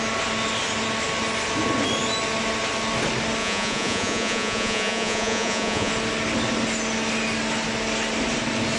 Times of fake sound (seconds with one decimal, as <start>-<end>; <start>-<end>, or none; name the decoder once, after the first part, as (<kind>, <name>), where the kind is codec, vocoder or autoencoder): 3.4-5.9 (vocoder, Vocos)